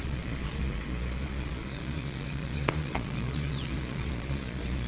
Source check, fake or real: fake